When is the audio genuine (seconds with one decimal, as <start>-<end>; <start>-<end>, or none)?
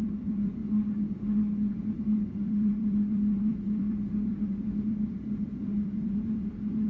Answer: 0.6-1.7